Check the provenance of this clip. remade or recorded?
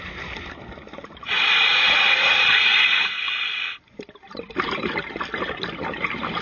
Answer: recorded